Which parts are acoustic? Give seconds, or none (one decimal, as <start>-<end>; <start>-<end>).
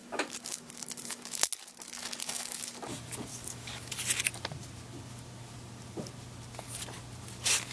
1.5-2.2; 2.7-3.3; 3.9-7.7